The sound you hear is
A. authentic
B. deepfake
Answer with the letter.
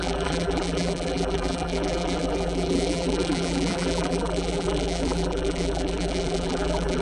B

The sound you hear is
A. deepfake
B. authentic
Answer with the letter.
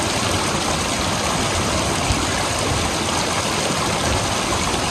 B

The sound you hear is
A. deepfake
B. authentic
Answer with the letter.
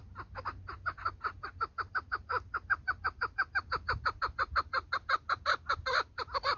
B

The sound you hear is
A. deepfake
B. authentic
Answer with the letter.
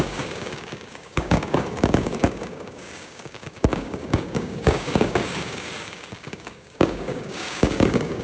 A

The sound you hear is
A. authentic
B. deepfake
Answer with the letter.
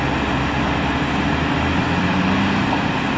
A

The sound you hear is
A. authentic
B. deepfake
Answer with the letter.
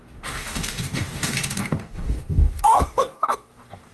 B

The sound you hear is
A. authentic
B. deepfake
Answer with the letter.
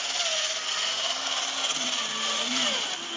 A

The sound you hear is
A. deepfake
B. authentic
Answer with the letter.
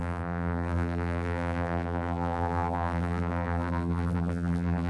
A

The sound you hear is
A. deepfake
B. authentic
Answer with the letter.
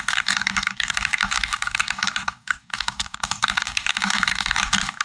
A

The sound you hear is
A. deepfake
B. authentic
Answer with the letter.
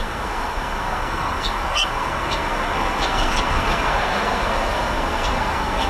A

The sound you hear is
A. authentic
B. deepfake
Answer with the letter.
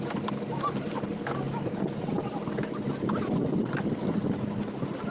A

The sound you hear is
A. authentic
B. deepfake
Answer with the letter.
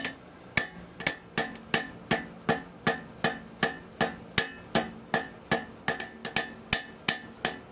A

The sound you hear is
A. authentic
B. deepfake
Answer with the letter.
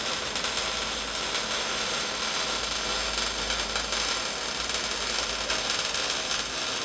A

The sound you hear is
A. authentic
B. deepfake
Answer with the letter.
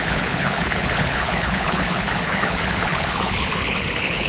B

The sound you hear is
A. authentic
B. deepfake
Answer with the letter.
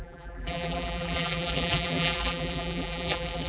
B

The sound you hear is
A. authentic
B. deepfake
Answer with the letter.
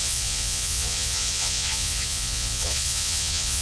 B